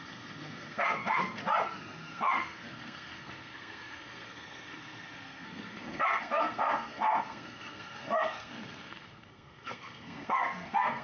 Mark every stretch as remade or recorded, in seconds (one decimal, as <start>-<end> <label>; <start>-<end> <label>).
0.0-1.4 remade; 1.4-2.1 recorded; 2.1-11.0 remade

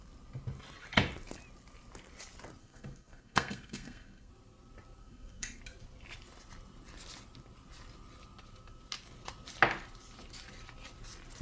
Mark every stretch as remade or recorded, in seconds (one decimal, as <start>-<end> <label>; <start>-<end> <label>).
0.0-2.6 recorded; 2.6-4.3 remade; 4.3-5.0 recorded; 5.0-5.6 remade; 5.6-11.4 recorded

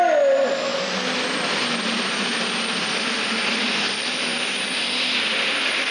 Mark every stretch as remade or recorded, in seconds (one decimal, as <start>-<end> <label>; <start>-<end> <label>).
0.0-5.9 recorded